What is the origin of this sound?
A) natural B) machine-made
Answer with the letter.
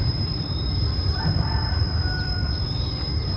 B